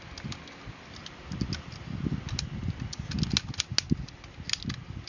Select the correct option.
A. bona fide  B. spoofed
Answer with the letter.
A